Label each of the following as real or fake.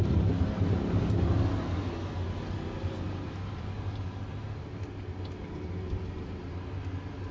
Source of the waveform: real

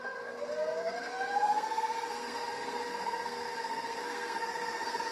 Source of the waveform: fake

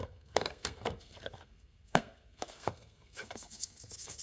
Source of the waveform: fake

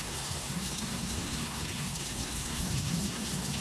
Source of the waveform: fake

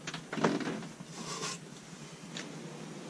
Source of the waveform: real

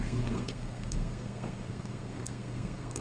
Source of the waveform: fake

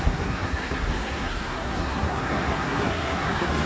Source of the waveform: fake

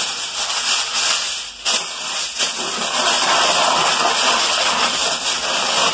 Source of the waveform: real